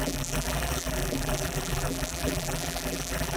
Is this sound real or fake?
fake